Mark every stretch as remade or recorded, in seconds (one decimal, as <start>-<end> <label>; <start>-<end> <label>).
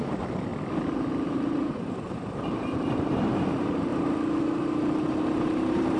0.0-0.5 remade; 0.5-1.3 recorded; 1.3-3.9 remade; 3.9-4.4 recorded; 4.4-6.0 remade